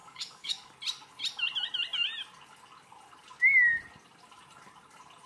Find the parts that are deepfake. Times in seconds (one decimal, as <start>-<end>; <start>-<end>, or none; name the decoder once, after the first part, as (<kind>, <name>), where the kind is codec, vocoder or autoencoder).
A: 0.0-0.7 (codec, DAC)